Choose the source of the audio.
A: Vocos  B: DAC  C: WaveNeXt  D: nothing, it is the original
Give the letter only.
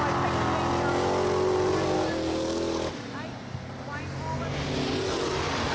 D